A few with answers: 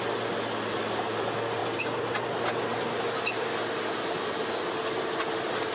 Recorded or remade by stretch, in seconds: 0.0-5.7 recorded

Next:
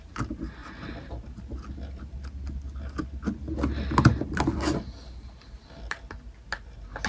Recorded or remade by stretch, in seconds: 0.0-7.1 recorded

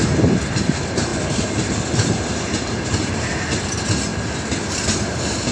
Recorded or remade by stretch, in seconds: 0.0-1.1 remade; 1.1-2.3 recorded; 2.3-4.1 remade; 4.1-4.7 recorded; 4.7-5.5 remade

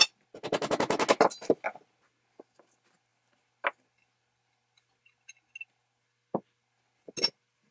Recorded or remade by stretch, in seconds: 0.0-7.7 recorded

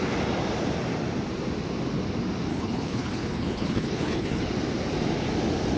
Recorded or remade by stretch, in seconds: 0.0-2.5 recorded; 2.5-4.4 remade; 4.4-5.8 recorded

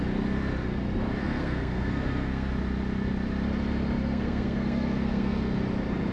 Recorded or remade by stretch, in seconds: 0.0-1.2 recorded; 1.2-2.5 remade; 2.5-4.0 recorded; 4.0-5.5 remade; 5.5-6.1 recorded